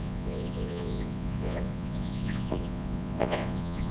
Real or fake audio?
fake